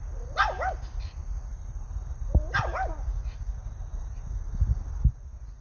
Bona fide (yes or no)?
yes